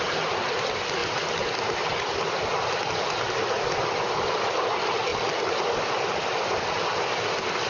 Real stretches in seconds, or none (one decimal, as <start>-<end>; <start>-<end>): 0.0-7.7